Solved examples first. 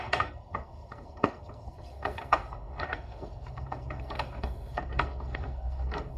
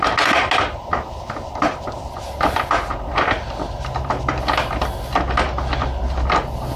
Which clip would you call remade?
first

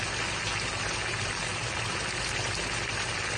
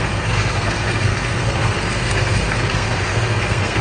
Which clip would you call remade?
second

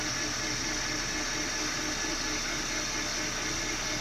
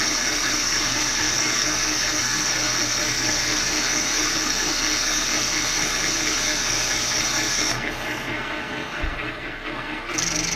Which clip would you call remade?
second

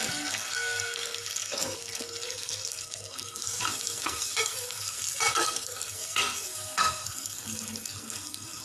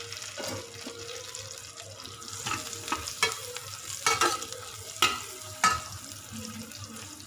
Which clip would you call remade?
first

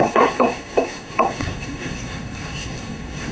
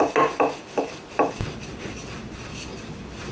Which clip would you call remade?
first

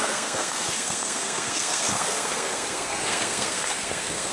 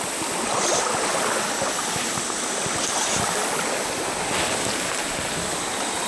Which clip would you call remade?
first